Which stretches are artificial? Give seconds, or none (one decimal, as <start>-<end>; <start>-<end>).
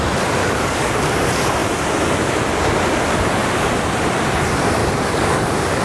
0.4-0.9; 4.8-5.8